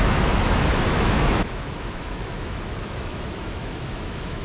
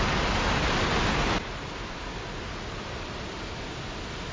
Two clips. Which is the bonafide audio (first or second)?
second